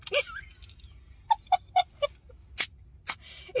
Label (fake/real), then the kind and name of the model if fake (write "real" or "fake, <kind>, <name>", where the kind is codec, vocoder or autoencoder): real